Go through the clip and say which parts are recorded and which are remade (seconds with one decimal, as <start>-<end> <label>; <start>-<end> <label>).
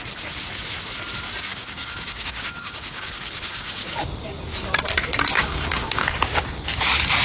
0.0-1.5 recorded; 1.5-3.9 remade; 3.9-5.3 recorded; 5.3-6.4 remade; 6.4-7.2 recorded